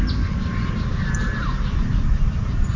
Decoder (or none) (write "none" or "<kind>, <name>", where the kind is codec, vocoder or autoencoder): none